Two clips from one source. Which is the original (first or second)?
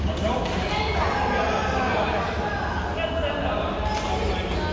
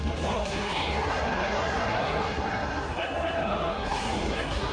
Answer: first